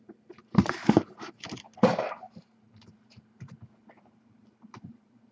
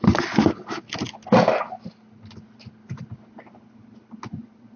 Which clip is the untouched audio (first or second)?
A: second